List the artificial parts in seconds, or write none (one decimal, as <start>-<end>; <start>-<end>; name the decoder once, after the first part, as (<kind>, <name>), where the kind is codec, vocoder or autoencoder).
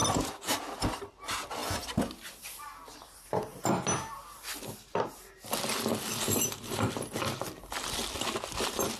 0.0-1.6 (vocoder, BigVGAN v2); 2.1-3.5; 6.4-8.0; 8.6-9.0